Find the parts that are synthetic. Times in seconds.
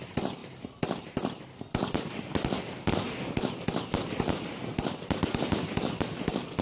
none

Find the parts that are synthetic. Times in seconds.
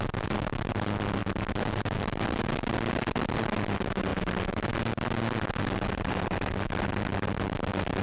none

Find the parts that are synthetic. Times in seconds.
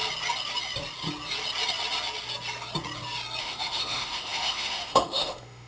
3.4-5.7 (autoencoder, DAC-VAE)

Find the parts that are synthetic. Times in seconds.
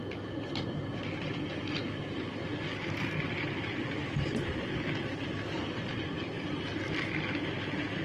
4.0-4.7 (vocoder, BigVGAN v2)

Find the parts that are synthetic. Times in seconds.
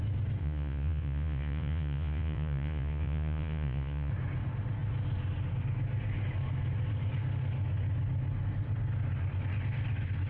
0.4-4.1 (vocoder, Vocos)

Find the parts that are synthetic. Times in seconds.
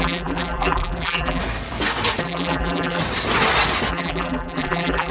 0.0-1.4 (vocoder, BigVGAN v2); 2.2-3.0; 3.9-5.1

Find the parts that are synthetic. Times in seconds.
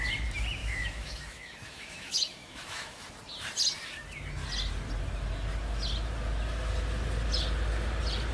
0.6-3.1 (autoencoder, DAC-VAE)